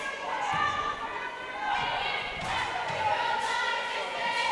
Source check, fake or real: fake